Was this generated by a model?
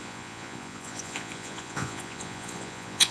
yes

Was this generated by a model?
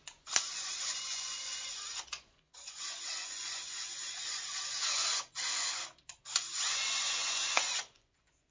yes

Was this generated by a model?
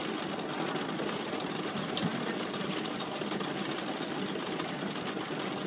no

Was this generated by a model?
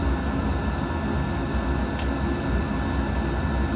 no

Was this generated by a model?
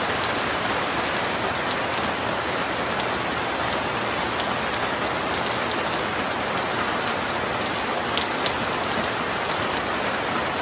no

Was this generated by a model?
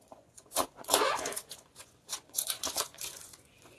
yes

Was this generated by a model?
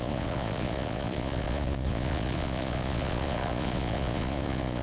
yes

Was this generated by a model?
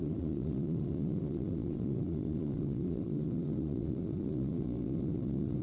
yes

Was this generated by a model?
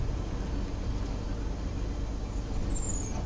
no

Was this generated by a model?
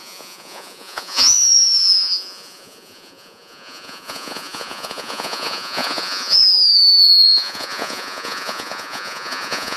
yes